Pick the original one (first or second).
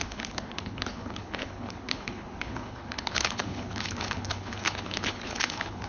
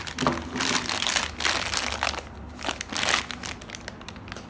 second